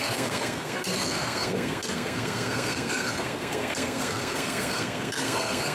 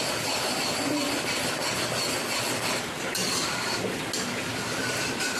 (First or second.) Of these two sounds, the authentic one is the second